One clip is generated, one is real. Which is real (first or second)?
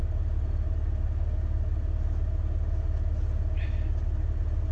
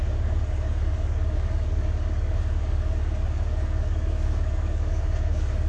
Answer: first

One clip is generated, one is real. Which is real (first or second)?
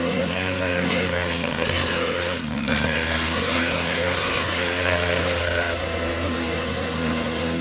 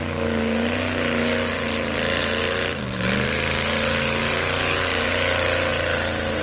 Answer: second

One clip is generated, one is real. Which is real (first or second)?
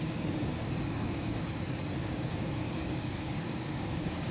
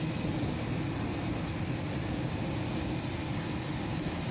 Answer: second